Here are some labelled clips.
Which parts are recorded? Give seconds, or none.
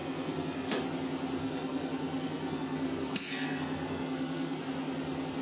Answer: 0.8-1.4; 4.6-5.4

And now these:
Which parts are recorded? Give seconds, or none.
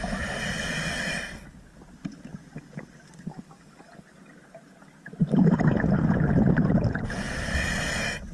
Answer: 0.0-8.3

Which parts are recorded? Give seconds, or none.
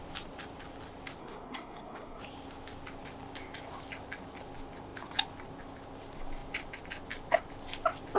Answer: 0.0-1.2; 2.2-8.2